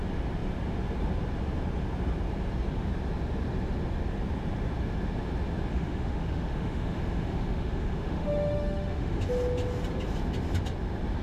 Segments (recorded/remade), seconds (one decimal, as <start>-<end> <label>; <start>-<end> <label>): 0.0-5.7 recorded; 5.7-9.2 remade; 9.2-11.2 recorded